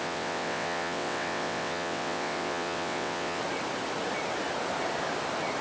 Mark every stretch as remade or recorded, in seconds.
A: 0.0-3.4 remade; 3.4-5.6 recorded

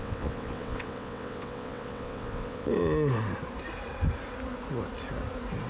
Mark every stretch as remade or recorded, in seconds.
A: 0.0-2.7 remade; 2.7-5.7 recorded

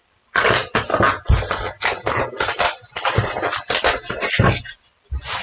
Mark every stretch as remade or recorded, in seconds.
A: 0.0-5.4 recorded

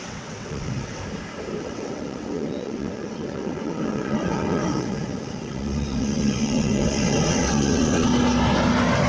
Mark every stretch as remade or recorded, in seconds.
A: 0.0-1.0 remade; 1.0-1.6 recorded; 1.6-8.1 remade; 8.1-9.1 recorded